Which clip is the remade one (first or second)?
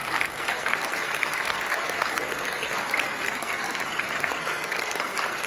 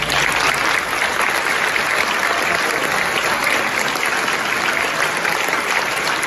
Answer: first